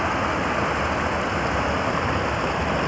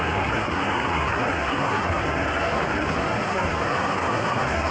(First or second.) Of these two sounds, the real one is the first